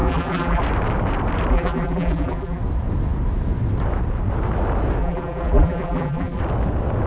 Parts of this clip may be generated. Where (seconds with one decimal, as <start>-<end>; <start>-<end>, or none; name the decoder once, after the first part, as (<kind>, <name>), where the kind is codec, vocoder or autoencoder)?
0.0-0.6 (vocoder, BigVGAN v2); 1.5-2.6; 5.0-6.4